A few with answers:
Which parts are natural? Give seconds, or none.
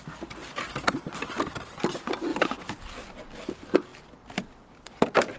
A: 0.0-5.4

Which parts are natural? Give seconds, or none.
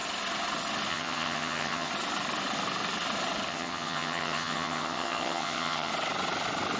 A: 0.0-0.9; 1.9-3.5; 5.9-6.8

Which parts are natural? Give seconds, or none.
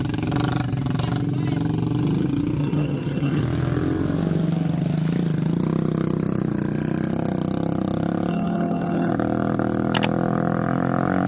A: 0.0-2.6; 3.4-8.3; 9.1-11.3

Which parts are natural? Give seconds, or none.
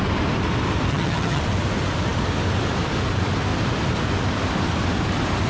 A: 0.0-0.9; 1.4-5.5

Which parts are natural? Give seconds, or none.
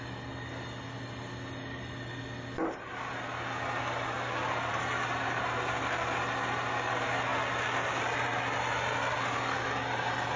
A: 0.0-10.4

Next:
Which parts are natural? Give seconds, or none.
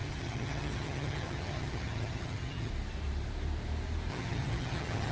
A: 2.7-4.1